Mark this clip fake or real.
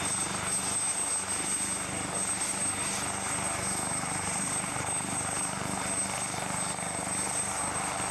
real